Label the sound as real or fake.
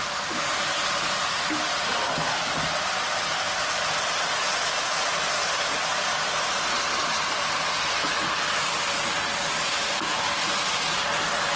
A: real